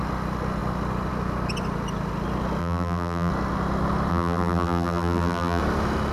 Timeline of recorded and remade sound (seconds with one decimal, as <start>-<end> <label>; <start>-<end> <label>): 0.0-2.6 recorded; 2.6-3.3 remade; 3.3-4.1 recorded; 4.1-5.6 remade; 5.6-6.1 recorded